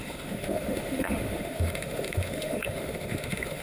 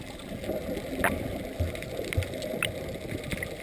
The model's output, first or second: first